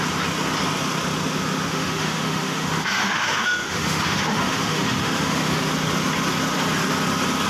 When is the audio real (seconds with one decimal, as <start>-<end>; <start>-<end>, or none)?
0.0-1.7; 5.7-7.5